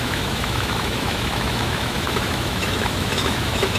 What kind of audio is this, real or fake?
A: fake